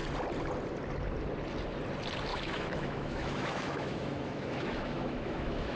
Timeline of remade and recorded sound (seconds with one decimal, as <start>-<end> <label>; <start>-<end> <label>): 0.0-2.3 recorded; 2.3-5.8 remade